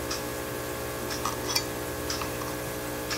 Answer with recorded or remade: recorded